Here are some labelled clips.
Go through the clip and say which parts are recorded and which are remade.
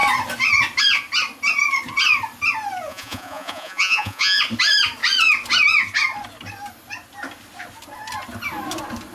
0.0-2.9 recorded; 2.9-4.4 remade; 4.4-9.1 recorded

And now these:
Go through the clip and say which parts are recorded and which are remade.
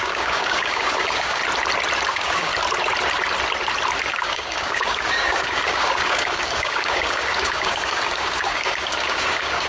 0.0-1.4 remade; 1.4-2.1 recorded; 2.1-2.5 remade; 2.5-4.2 recorded; 4.2-9.7 remade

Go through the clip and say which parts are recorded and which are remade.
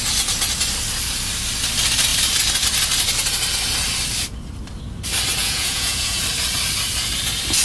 0.0-5.4 recorded; 5.4-6.2 remade; 6.2-7.6 recorded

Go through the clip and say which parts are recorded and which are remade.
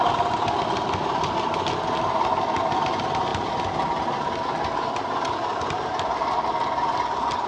0.0-7.5 recorded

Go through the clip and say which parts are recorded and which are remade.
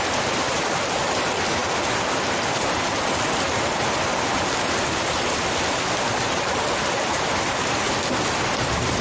0.0-1.6 remade; 1.6-2.6 recorded; 2.6-9.0 remade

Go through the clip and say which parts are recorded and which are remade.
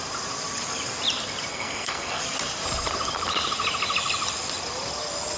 0.0-1.5 recorded; 1.5-2.2 remade; 2.2-5.4 recorded